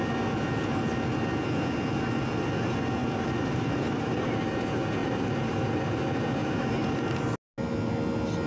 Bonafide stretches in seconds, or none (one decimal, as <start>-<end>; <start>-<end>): 0.0-3.0; 4.3-5.0; 6.0-6.4; 7.2-8.5